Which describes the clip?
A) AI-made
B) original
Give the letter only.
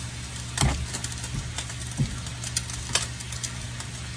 B